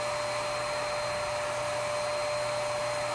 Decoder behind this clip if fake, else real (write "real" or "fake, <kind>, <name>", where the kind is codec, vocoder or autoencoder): real